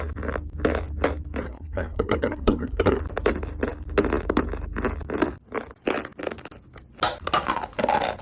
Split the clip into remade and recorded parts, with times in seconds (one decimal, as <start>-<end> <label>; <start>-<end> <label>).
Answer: 0.0-1.4 recorded; 1.4-3.0 remade; 3.0-8.2 recorded